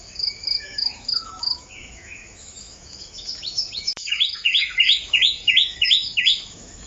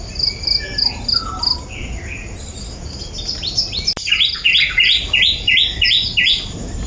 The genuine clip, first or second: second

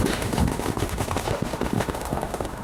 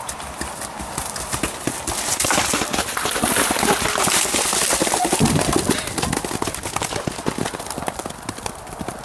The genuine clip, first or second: second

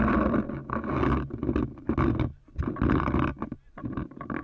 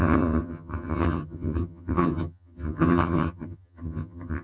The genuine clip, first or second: first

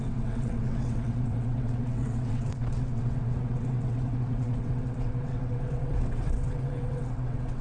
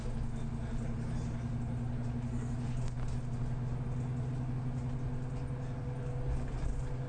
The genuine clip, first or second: second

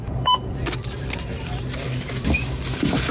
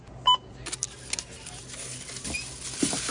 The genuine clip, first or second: second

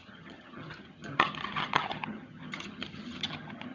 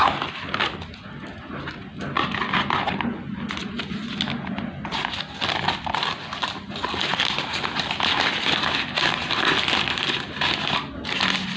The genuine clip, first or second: second